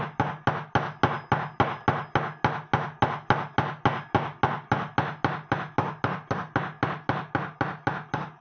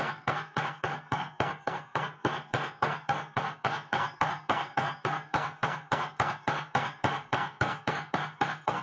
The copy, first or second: second